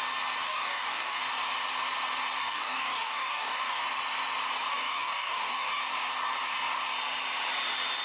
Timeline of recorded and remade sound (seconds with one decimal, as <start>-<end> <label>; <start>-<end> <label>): 0.0-0.4 recorded; 0.4-1.2 remade; 1.2-2.4 recorded; 2.4-3.8 remade; 3.8-4.7 recorded; 4.7-5.8 remade; 5.8-8.0 recorded